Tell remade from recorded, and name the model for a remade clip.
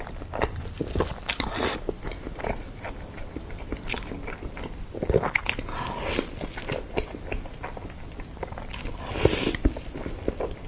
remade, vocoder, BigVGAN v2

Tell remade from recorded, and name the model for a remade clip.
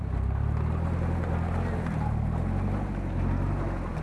recorded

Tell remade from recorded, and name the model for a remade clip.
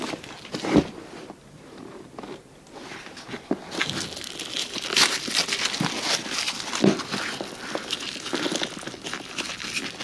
recorded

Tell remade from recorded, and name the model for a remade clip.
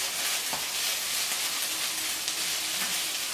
recorded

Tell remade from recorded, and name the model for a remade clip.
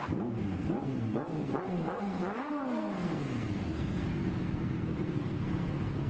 remade, codec, SNAC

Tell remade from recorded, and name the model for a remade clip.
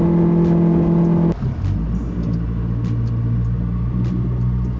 recorded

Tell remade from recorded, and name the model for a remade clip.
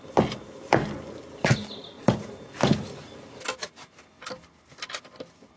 recorded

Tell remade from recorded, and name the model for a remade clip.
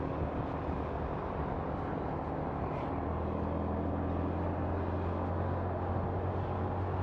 recorded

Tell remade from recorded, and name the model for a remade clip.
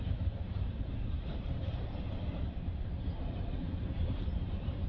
remade, vocoder, BigVGAN v2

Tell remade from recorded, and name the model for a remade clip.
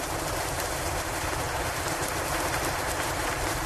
recorded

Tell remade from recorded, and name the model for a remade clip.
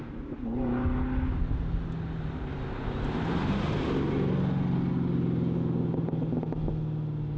recorded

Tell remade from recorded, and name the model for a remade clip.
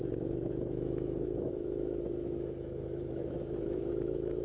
remade, autoencoder, DAC-VAE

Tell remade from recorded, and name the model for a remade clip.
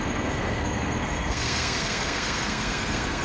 remade, codec, SNAC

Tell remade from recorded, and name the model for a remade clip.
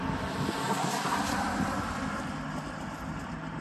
recorded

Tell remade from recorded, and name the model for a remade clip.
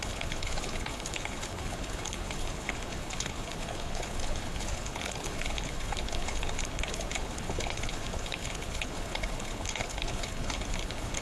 remade, codec, HILCodec